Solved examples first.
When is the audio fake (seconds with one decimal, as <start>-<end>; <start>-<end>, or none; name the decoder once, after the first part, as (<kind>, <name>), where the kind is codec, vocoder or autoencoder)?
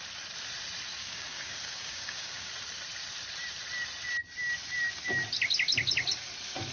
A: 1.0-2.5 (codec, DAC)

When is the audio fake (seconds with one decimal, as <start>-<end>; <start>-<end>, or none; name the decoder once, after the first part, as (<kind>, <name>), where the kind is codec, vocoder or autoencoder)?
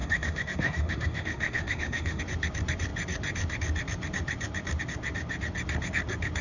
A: 0.0-2.2 (autoencoder, DAC-VAE)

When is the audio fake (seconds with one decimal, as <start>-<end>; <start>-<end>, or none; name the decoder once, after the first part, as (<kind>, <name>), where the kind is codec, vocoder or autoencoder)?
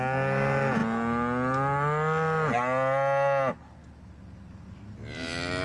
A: none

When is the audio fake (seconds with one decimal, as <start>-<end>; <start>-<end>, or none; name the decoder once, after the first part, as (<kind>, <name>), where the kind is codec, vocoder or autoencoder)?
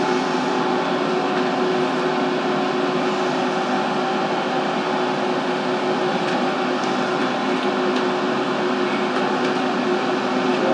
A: none